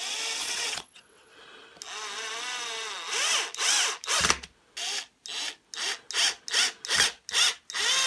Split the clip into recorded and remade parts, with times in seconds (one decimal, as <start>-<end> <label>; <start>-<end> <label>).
0.0-0.4 recorded; 0.4-1.4 remade; 1.4-8.1 recorded